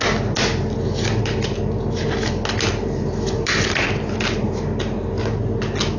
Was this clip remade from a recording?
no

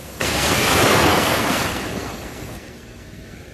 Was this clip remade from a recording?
yes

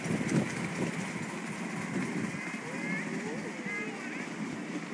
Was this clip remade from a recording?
no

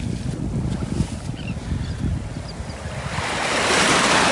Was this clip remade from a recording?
no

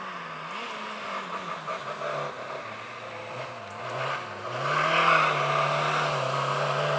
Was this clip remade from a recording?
no